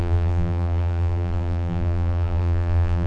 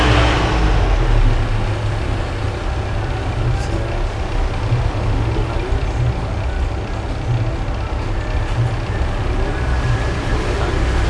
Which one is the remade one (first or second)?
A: first